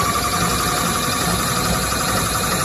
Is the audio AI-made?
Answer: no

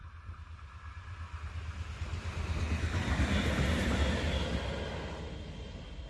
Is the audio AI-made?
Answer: no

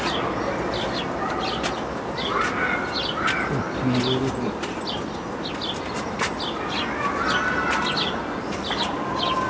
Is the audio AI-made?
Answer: no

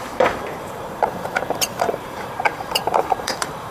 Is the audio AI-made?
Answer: yes